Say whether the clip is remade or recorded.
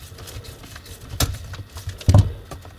recorded